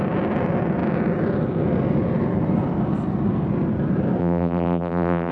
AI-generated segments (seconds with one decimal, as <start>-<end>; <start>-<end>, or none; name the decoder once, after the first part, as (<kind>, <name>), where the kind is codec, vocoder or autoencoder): 4.2-5.3 (vocoder, BigVGAN v2)